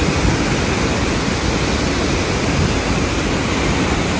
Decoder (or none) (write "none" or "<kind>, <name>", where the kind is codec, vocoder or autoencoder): none